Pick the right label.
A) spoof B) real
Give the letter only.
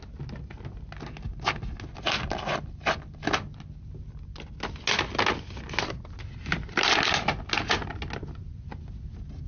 B